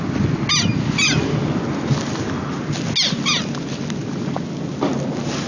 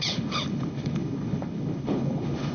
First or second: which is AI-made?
second